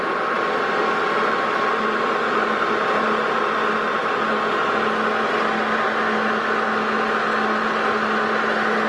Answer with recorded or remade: recorded